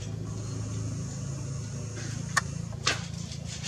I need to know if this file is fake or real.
real